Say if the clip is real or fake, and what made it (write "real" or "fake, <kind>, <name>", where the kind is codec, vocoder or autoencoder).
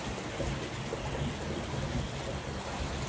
real